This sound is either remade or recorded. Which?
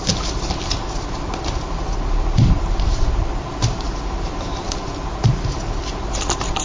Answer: recorded